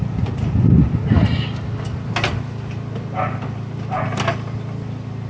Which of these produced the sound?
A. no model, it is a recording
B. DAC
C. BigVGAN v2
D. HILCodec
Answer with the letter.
A